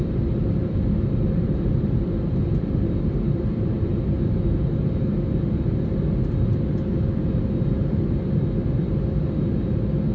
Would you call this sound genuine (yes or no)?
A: yes